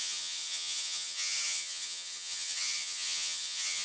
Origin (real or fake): fake